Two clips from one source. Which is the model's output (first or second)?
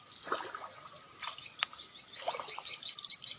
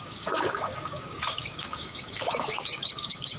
second